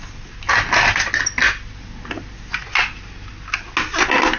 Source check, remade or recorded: recorded